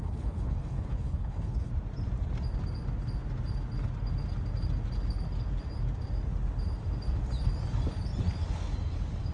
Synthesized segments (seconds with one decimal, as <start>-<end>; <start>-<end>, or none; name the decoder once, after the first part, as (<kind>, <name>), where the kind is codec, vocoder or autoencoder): 0.0-1.7 (codec, HILCodec)

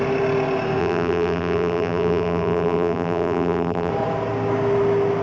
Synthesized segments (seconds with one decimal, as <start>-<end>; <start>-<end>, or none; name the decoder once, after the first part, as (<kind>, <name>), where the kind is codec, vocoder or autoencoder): 0.8-3.9 (vocoder, BigVGAN v2)

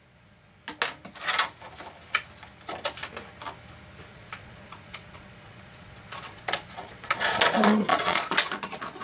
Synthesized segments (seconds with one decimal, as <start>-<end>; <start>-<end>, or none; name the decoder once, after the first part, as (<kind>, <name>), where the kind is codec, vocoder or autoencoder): 0.0-0.6 (vocoder, Vocos); 4.1-9.0

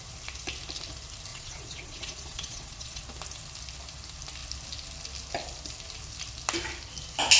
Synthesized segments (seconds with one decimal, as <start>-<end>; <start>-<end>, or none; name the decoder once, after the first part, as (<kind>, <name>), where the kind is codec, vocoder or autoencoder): 1.3-3.0 (vocoder, Vocos)

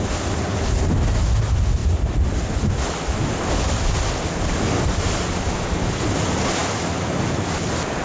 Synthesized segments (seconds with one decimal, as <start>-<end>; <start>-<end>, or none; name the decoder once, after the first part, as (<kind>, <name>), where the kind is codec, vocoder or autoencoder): none

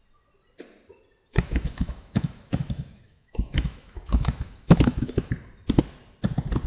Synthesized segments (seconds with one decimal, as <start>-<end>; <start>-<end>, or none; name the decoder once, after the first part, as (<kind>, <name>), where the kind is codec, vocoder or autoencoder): 1.3-5.3 (autoencoder, DAC-VAE)